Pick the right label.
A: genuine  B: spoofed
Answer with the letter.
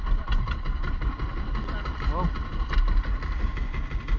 A